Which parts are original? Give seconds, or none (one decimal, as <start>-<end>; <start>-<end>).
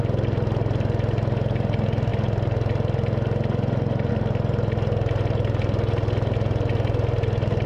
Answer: 0.0-7.7